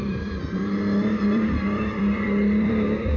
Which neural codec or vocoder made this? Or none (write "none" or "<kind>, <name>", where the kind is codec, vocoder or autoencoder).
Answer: vocoder, BigVGAN v2